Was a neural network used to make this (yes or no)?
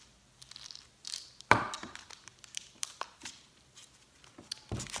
yes